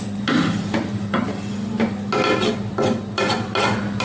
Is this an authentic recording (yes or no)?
yes